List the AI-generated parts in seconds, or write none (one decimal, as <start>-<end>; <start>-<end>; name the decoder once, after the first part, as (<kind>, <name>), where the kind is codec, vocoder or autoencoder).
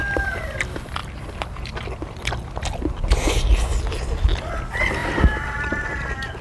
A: 1.0-2.5 (vocoder, BigVGAN v2); 5.0-6.4